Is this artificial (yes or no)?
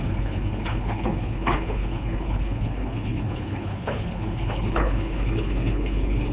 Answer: yes